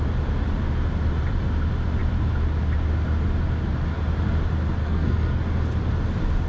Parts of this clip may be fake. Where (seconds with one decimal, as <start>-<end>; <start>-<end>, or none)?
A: 4.8-5.4